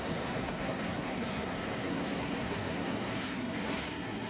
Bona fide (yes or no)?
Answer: no